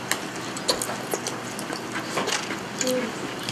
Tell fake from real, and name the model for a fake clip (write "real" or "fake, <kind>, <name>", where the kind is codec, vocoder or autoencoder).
real